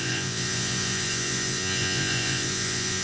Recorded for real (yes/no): no